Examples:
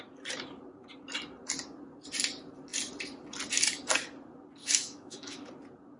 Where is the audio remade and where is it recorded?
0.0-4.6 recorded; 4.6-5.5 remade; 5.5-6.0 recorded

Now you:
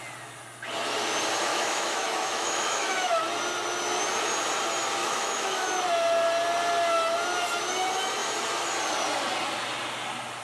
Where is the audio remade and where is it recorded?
0.0-1.5 recorded; 1.5-3.2 remade; 3.2-5.0 recorded; 5.0-5.8 remade; 5.8-10.4 recorded

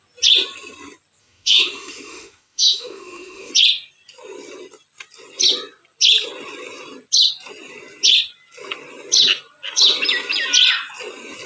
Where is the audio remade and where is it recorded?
0.0-1.2 recorded; 1.2-3.5 remade; 3.5-11.5 recorded

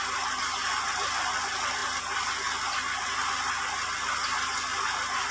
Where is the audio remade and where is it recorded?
0.0-5.3 recorded